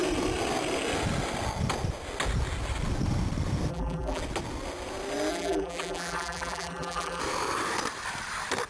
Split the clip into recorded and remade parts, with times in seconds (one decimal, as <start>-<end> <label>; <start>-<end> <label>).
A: 0.0-3.7 recorded; 3.7-4.2 remade; 4.2-5.3 recorded; 5.3-7.2 remade; 7.2-8.7 recorded